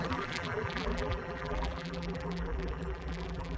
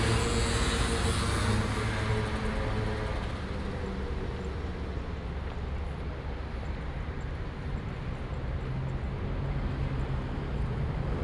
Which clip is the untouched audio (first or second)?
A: second